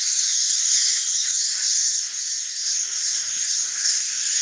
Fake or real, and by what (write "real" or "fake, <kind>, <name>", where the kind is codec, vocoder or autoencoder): fake, codec, DAC